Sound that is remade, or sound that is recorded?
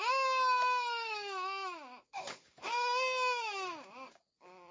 remade